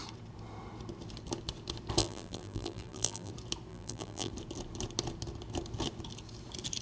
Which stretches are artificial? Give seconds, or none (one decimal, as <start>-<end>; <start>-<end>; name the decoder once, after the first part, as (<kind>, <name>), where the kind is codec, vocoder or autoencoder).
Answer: 2.0-3.3 (vocoder, BigVGAN v2); 3.7-4.3